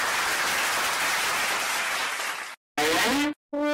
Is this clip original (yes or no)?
yes